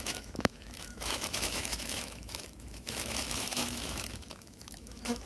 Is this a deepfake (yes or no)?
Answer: yes